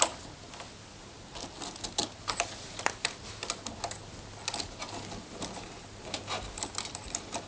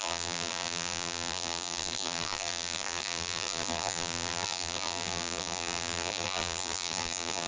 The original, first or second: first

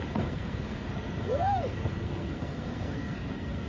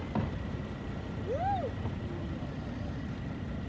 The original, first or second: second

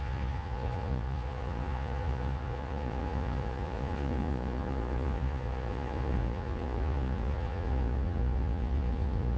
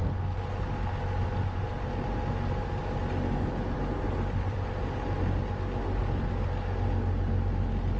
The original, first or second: second